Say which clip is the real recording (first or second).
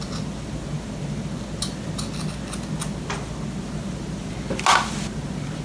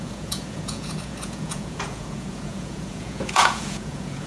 first